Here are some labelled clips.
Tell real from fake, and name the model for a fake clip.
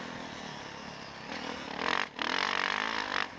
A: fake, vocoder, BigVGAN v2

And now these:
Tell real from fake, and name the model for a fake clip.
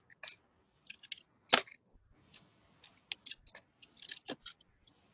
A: real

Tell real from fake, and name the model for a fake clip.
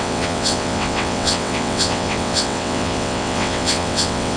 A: fake, vocoder, WaveNeXt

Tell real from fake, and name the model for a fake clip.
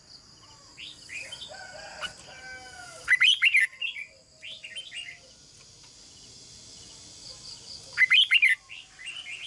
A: real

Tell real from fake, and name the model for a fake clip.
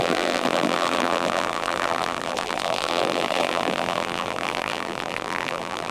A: fake, vocoder, BigVGAN v2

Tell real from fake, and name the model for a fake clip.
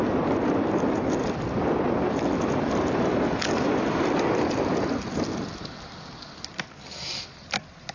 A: real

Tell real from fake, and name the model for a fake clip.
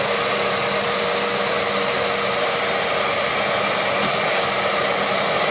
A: real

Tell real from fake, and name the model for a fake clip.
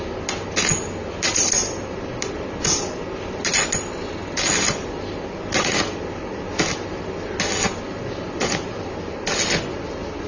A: real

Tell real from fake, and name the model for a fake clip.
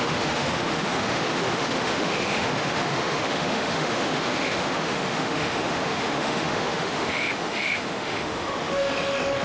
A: fake, autoencoder, DAC-VAE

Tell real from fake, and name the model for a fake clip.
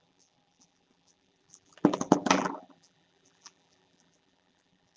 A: fake, vocoder, BigVGAN v2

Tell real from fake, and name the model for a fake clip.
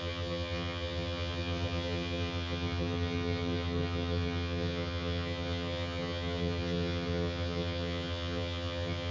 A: fake, vocoder, HiFi-GAN